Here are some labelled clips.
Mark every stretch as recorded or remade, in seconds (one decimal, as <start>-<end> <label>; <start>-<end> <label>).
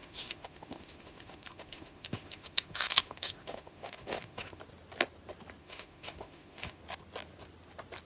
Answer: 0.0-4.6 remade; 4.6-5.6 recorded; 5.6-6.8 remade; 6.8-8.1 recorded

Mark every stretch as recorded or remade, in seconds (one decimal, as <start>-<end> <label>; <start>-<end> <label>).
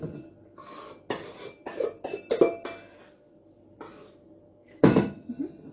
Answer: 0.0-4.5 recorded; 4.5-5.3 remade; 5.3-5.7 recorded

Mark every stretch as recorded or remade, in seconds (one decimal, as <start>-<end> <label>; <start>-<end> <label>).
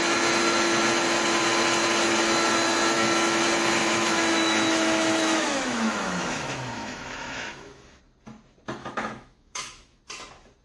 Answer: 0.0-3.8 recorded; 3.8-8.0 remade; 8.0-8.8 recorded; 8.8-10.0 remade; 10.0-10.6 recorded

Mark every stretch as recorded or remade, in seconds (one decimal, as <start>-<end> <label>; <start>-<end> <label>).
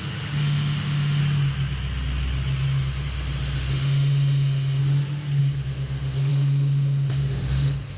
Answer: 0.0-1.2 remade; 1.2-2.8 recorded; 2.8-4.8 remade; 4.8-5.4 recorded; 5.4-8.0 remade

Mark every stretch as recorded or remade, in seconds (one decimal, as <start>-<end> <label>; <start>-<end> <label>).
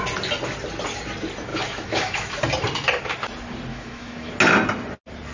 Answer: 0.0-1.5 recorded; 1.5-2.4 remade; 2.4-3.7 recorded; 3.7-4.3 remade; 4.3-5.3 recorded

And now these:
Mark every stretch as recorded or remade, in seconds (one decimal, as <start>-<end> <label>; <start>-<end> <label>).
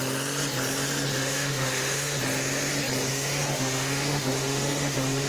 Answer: 0.0-1.1 recorded; 1.1-2.2 remade; 2.2-3.1 recorded; 3.1-5.3 remade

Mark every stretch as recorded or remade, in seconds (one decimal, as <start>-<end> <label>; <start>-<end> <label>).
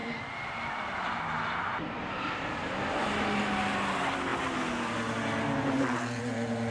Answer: 0.0-6.7 recorded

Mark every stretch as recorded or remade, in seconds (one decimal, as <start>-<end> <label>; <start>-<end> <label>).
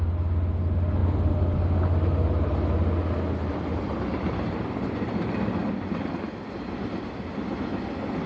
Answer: 0.0-8.3 recorded